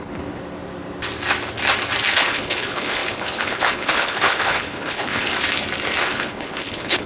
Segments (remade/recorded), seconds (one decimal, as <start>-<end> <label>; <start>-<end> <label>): 0.0-0.4 remade; 0.4-2.1 recorded; 2.1-5.3 remade; 5.3-6.0 recorded; 6.0-7.1 remade